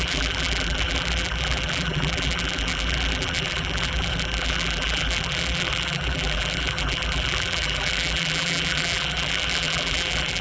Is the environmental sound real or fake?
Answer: fake